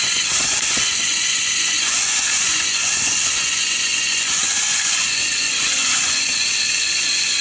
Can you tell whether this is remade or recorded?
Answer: remade